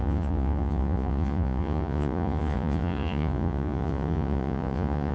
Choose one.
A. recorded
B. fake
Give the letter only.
B